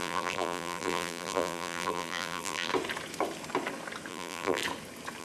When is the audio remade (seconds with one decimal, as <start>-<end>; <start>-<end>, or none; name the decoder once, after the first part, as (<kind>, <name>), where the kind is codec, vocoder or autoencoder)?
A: 0.0-2.7 (vocoder, BigVGAN v2); 4.1-4.6